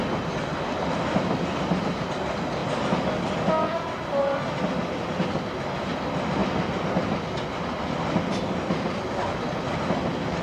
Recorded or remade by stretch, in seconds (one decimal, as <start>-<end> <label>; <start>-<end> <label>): 0.0-10.4 recorded